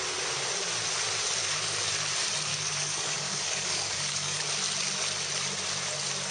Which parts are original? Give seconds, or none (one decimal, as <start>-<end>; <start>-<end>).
0.0-1.4; 1.9-2.5; 4.4-6.3